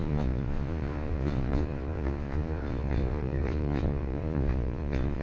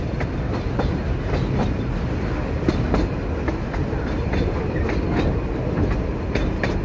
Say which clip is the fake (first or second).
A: first